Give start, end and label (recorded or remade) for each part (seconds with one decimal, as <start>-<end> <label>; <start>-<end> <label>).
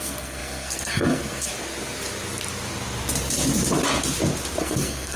0.0-1.5 remade; 1.5-4.6 recorded; 4.6-5.2 remade